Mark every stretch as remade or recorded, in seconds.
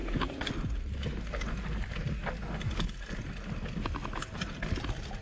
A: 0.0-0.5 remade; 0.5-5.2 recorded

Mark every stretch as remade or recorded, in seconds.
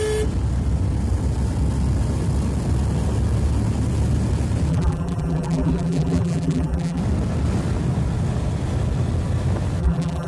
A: 0.0-4.7 recorded; 4.7-7.0 remade; 7.0-9.8 recorded; 9.8-10.3 remade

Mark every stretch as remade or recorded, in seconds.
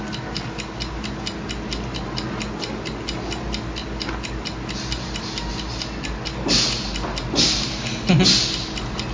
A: 0.0-9.1 recorded